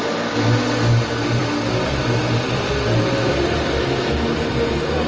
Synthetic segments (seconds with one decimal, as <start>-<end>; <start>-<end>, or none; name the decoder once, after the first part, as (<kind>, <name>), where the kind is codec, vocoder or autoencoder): none